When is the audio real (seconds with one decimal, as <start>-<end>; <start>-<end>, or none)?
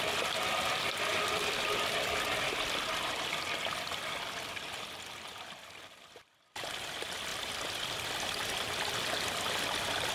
7.3-7.8